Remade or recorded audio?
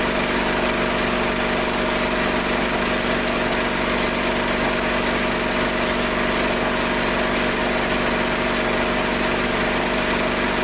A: recorded